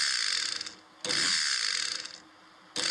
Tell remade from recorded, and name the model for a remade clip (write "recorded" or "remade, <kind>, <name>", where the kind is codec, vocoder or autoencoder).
recorded